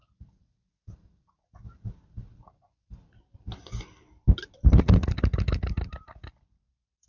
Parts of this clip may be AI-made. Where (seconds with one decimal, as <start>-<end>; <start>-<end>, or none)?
none